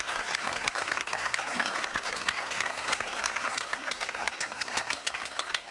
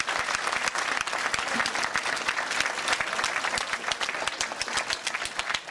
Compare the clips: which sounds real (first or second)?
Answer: second